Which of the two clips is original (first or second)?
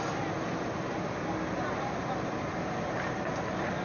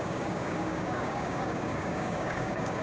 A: first